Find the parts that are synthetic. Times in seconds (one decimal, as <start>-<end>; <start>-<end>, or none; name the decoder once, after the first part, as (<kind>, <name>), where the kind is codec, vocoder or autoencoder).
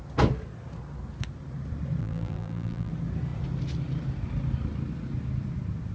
2.0-2.9 (vocoder, BigVGAN v2)